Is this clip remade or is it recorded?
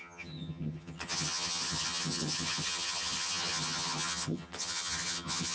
remade